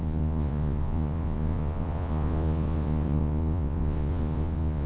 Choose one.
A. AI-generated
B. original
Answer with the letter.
A